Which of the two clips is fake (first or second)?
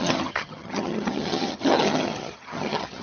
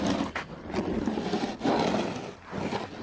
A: first